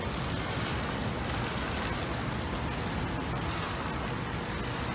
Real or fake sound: real